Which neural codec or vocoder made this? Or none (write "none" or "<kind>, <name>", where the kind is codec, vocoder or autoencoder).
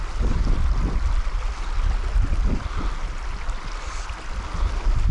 none